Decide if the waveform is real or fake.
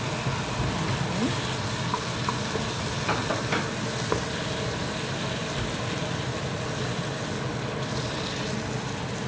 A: real